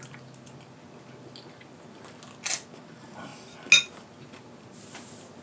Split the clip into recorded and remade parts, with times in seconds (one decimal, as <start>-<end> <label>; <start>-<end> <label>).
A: 0.0-5.4 recorded